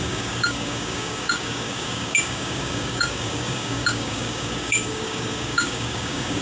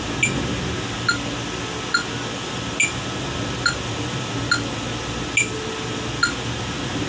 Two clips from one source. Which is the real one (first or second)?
second